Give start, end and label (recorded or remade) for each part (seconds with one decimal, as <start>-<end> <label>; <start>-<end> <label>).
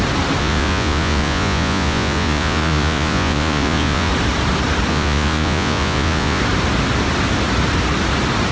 0.0-0.4 recorded; 0.4-4.1 remade; 4.1-4.9 recorded; 4.9-6.4 remade; 6.4-8.5 recorded